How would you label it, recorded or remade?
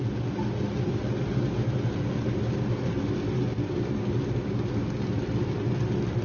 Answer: recorded